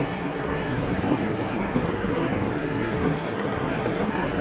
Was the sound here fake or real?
fake